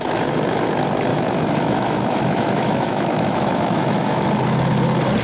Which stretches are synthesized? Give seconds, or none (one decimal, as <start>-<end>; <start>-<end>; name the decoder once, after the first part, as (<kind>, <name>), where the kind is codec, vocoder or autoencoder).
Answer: 1.1-4.2 (autoencoder, DAC-VAE)